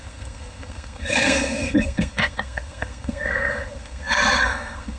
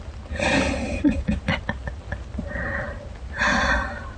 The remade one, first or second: first